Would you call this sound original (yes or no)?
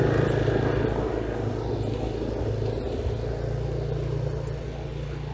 yes